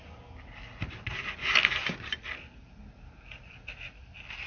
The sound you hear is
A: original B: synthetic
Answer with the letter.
A